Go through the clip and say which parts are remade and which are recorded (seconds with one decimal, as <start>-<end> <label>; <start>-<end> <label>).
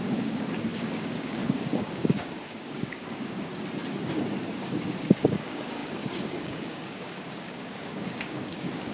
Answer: 0.0-3.5 remade; 3.5-4.5 recorded; 4.5-8.9 remade